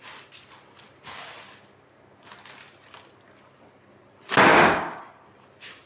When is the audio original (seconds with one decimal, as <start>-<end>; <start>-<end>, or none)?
0.0-4.5; 5.0-5.9